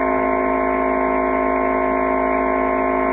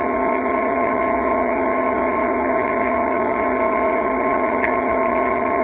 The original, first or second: first